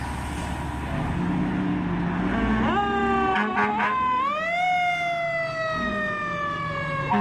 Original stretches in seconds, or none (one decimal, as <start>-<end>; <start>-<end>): 0.0-7.2